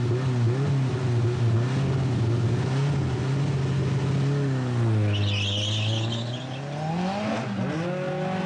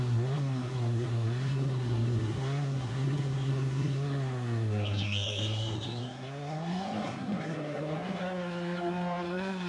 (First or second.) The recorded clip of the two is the first